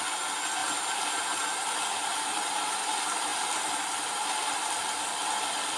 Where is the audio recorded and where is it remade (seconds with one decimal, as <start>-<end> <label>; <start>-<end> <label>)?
0.0-0.6 recorded; 0.6-2.7 remade; 2.7-3.3 recorded; 3.3-5.8 remade